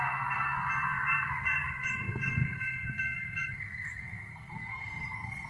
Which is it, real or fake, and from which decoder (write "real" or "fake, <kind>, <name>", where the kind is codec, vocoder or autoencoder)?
fake, codec, SNAC